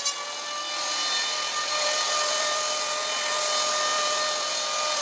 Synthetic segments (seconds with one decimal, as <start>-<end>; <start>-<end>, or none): 0.9-3.3; 3.9-4.5